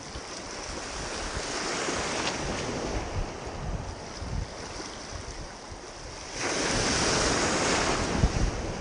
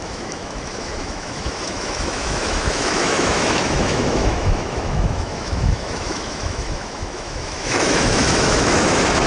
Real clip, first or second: first